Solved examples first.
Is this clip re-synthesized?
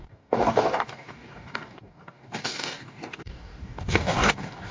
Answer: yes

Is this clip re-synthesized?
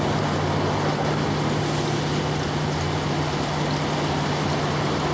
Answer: no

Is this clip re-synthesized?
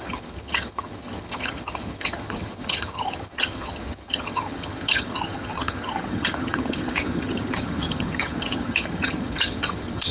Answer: yes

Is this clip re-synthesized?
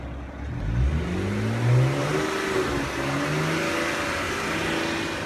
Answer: no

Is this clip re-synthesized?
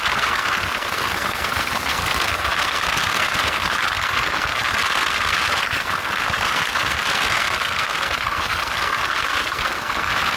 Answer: yes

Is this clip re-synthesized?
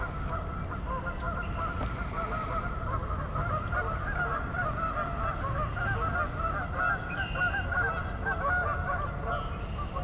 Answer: no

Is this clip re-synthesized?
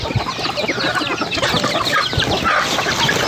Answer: no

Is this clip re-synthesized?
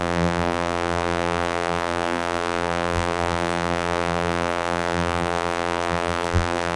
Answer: yes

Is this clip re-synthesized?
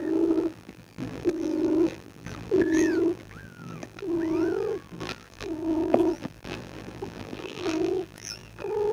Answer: yes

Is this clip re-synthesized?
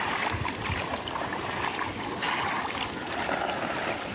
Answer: yes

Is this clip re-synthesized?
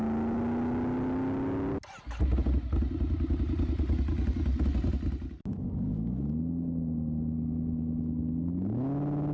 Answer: no